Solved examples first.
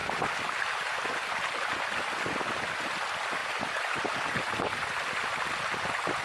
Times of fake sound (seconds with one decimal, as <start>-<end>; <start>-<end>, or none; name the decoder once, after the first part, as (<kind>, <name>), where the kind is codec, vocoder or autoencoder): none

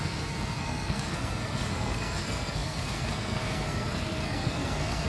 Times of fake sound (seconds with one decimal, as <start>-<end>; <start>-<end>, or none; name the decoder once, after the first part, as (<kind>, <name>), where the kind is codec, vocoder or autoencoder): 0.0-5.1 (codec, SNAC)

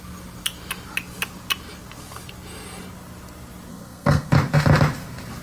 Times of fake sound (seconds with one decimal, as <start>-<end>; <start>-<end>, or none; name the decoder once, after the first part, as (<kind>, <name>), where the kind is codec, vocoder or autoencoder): 3.7-4.3 (codec, SNAC)